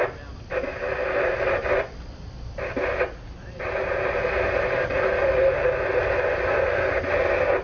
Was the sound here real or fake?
real